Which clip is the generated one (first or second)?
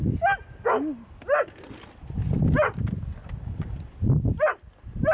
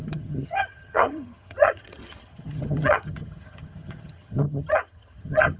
second